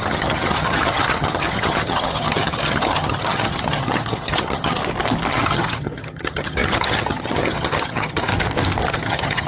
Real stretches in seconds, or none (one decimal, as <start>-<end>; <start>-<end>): 4.8-5.3; 8.3-8.9